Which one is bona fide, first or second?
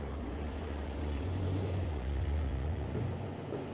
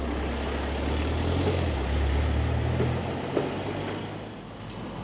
second